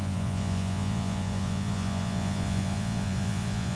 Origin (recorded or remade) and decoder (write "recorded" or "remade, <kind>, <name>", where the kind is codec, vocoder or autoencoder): remade, vocoder, Vocos